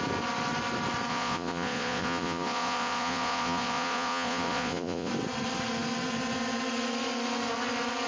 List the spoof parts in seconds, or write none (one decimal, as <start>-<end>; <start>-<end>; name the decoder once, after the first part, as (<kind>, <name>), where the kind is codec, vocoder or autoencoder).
1.1-5.1 (vocoder, Vocos)